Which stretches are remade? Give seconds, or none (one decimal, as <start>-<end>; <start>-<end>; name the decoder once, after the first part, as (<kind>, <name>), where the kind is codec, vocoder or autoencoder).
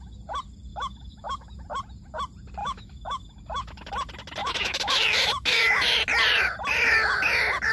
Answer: 0.7-1.5 (autoencoder, DAC-VAE); 2.6-3.9; 4.4-6.0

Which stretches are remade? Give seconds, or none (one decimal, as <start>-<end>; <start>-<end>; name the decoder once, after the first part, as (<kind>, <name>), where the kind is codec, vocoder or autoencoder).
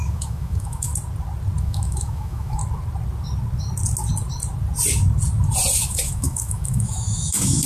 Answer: 0.0-0.9 (autoencoder, DAC-VAE); 1.6-2.6; 5.8-7.7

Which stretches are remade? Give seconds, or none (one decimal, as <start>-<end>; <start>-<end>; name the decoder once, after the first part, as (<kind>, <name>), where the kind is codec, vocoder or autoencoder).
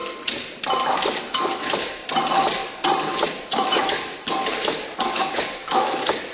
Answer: 1.2-2.0 (autoencoder, DAC-VAE); 3.4-4.1; 5.0-6.3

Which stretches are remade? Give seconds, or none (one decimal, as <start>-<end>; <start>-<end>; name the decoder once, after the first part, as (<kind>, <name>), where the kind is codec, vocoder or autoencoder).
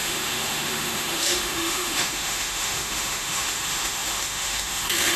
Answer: 0.0-5.2 (autoencoder, DAC-VAE)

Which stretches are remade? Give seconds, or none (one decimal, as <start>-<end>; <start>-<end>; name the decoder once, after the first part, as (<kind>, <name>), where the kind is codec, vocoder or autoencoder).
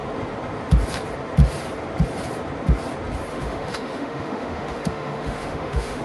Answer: 3.3-6.0 (autoencoder, DAC-VAE)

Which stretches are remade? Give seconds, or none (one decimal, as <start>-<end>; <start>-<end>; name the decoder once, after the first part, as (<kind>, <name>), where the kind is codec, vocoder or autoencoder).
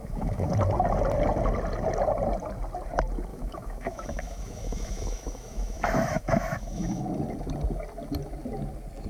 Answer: 0.0-0.5 (autoencoder, DAC-VAE); 3.3-7.0